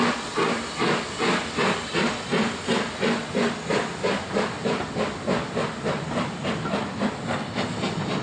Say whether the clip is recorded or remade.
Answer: recorded